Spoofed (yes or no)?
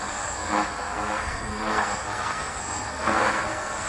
yes